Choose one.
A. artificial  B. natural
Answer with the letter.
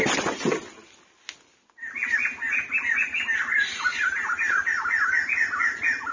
B